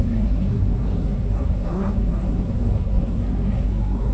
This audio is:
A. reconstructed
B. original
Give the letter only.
A